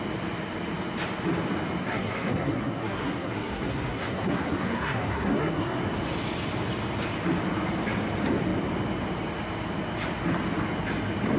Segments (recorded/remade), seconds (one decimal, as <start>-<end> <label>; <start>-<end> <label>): 0.0-1.8 recorded; 1.8-5.8 remade; 5.8-11.4 recorded